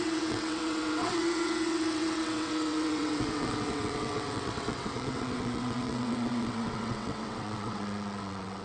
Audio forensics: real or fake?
fake